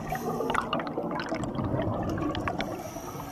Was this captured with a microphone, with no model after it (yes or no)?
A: yes